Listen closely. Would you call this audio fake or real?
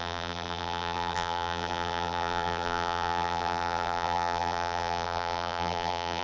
fake